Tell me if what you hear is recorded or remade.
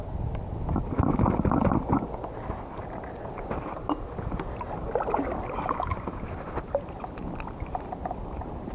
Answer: recorded